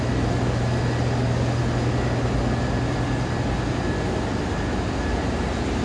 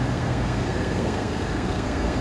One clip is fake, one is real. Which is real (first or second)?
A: first